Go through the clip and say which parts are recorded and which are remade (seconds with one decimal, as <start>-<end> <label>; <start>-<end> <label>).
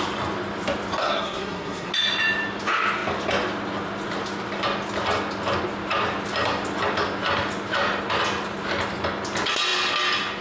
0.0-1.0 recorded; 1.0-1.9 remade; 1.9-10.4 recorded